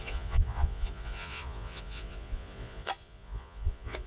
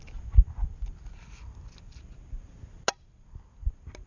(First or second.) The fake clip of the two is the first